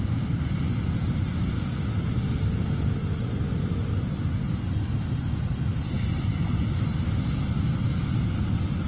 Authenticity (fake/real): real